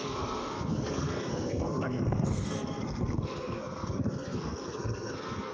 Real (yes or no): no